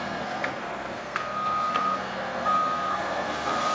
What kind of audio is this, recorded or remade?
remade